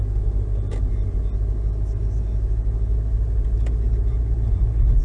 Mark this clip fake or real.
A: real